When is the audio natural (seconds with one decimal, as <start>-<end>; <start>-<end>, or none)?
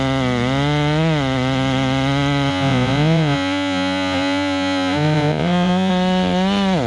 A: 0.0-2.5; 5.9-6.9